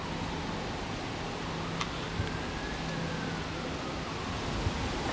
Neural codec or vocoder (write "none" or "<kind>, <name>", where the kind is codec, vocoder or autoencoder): none